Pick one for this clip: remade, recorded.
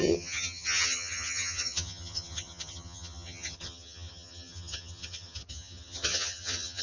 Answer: remade